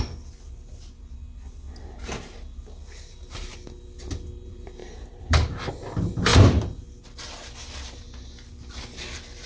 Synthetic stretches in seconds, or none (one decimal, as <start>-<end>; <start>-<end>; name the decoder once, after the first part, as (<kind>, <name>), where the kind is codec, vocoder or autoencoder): 4.8-5.7 (vocoder, BigVGAN v2); 6.3-6.8